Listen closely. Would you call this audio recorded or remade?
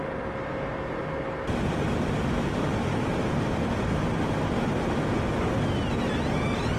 recorded